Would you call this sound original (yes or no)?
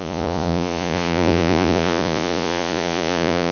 no